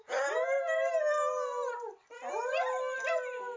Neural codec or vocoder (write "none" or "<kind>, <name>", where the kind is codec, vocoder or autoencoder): none